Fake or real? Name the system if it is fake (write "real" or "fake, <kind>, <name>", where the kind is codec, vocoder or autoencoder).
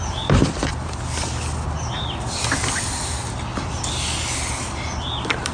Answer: real